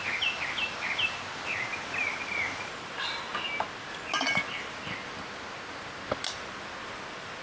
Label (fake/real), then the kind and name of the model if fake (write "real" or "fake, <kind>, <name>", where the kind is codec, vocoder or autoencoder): real